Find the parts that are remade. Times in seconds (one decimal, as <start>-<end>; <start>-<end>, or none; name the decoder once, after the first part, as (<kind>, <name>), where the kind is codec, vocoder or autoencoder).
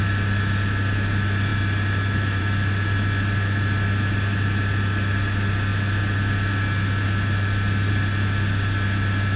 none